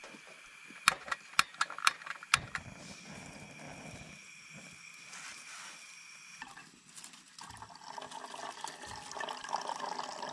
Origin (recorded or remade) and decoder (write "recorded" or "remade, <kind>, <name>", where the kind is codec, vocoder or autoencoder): recorded